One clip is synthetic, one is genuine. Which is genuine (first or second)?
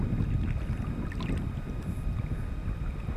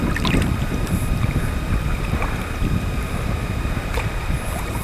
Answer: first